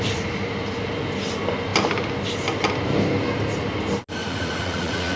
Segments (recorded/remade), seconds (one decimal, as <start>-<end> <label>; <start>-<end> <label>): 0.0-4.2 recorded; 4.2-5.2 remade